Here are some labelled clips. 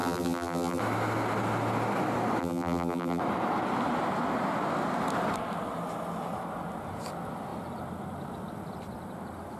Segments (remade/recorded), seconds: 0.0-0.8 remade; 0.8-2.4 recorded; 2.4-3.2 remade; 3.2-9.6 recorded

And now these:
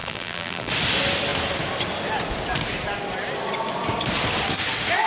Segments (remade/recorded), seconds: 0.0-0.7 remade; 0.7-5.1 recorded

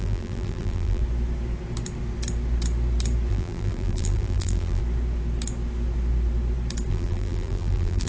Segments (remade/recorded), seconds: 0.0-1.0 remade; 1.0-3.3 recorded; 3.3-4.8 remade; 4.8-6.9 recorded; 6.9-8.1 remade